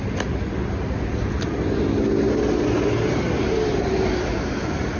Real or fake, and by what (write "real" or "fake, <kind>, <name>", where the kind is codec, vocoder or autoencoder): real